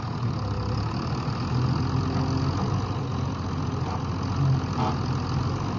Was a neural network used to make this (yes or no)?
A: no